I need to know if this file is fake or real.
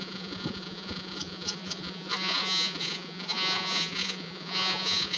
fake